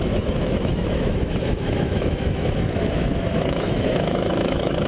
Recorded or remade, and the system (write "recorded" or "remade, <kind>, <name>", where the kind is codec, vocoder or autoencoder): remade, autoencoder, DAC-VAE